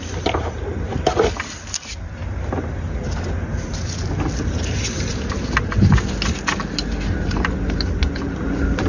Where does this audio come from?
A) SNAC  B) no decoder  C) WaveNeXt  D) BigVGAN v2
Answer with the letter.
B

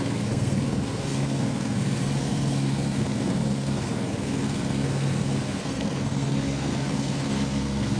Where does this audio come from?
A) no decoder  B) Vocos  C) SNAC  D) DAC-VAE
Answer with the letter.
C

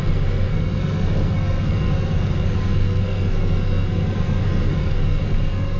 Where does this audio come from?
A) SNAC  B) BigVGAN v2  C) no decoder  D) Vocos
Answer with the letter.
A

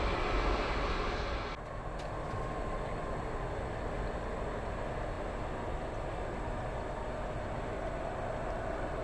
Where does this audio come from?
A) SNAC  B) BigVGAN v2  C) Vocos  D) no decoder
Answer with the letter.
D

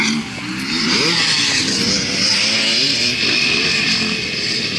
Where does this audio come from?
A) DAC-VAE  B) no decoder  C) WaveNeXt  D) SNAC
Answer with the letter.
B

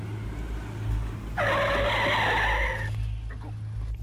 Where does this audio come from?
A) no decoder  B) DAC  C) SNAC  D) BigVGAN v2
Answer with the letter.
A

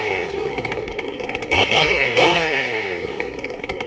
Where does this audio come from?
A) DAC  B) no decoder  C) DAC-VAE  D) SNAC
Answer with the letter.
D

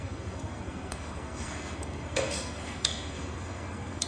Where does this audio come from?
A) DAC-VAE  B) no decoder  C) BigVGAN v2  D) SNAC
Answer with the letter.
D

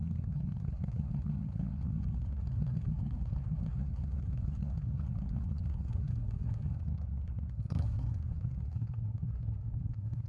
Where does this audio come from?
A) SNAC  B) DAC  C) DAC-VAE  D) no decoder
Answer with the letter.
A